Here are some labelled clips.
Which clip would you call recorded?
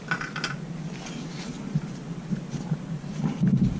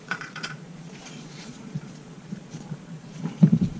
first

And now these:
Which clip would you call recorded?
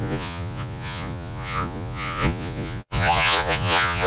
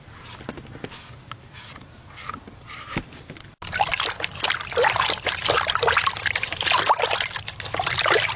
second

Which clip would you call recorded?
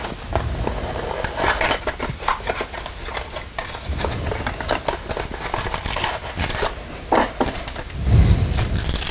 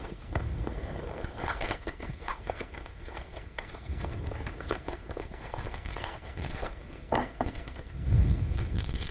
first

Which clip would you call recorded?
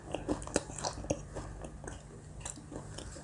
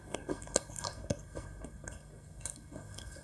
first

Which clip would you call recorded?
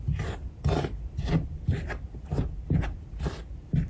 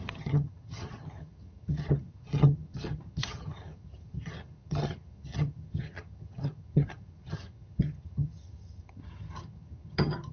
first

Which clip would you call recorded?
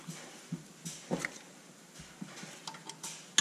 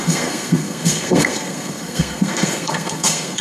first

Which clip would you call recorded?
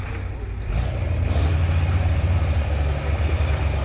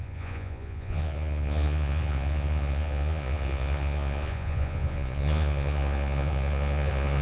first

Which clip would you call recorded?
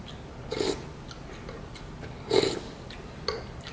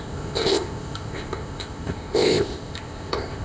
first